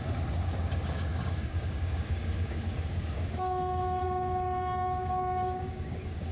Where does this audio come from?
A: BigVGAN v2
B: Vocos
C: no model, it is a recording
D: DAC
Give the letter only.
D